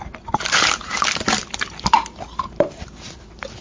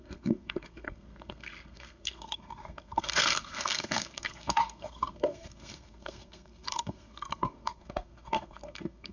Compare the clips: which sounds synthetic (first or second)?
second